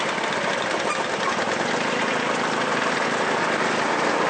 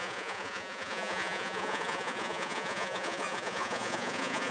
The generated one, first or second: second